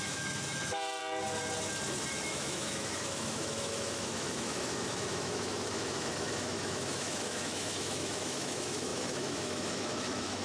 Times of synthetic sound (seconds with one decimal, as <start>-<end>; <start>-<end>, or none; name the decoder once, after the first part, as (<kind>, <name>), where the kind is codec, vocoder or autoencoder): 0.0-1.0 (autoencoder, DAC-VAE); 2.1-10.4